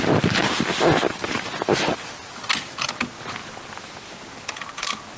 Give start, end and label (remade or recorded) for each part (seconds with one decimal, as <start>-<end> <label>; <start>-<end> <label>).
0.0-5.2 recorded